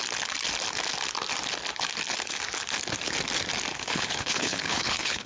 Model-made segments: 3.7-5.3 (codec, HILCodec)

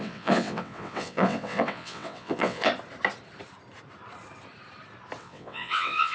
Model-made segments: 0.0-2.7 (vocoder, WaveNeXt); 5.2-6.1